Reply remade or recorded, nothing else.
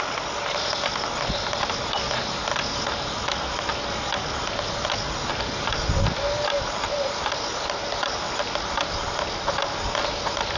recorded